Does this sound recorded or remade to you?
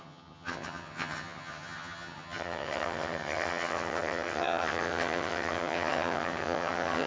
remade